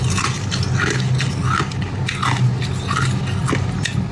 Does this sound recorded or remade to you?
recorded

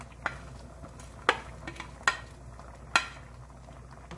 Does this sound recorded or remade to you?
recorded